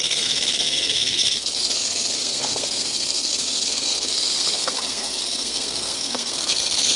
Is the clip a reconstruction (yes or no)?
yes